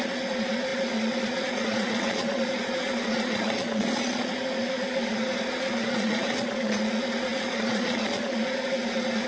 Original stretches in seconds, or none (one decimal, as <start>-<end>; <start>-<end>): none